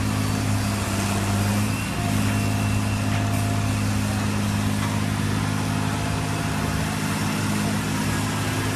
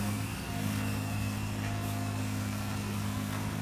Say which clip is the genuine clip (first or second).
first